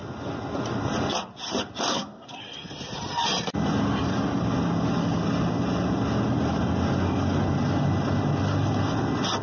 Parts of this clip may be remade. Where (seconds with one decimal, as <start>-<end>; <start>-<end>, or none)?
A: 1.9-2.4